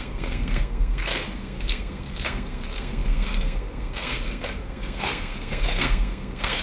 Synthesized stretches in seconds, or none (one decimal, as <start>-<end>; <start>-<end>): 0.0-6.6